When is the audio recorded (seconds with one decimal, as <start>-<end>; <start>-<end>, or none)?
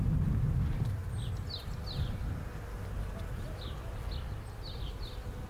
0.0-5.5